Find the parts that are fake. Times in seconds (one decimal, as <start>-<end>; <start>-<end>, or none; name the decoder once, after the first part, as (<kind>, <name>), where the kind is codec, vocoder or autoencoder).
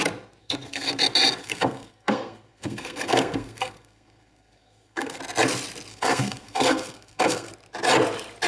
0.4-0.9 (codec, SNAC); 1.4-5.2; 5.9-7.5